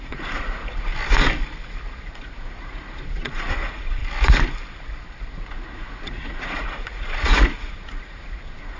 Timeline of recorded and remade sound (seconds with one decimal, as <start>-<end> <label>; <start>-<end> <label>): 0.0-0.6 remade; 0.6-2.0 recorded; 2.0-4.0 remade; 4.0-5.3 recorded; 5.3-8.8 remade